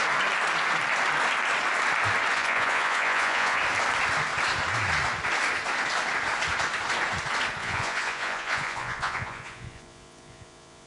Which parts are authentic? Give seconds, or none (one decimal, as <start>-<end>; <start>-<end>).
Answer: 0.0-2.3; 3.6-7.6